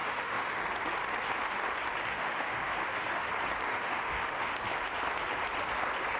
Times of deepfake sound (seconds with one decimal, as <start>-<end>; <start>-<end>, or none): 0.0-0.6; 2.1-3.3; 3.7-4.5